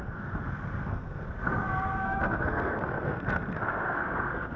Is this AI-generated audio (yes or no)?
yes